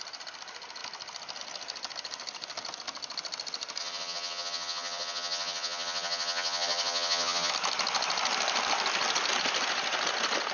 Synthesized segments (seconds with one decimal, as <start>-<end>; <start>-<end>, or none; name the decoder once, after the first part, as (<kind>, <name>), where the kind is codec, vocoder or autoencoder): 3.8-7.5 (vocoder, HiFi-GAN)